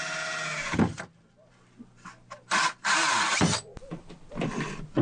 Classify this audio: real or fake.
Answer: real